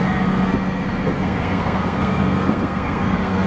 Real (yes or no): no